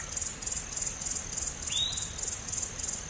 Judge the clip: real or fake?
real